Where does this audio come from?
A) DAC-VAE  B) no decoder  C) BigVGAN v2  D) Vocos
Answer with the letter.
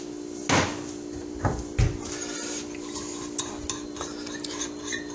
B